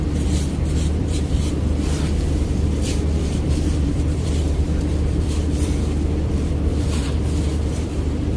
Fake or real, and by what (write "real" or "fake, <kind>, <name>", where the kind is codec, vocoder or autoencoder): fake, vocoder, BigVGAN v2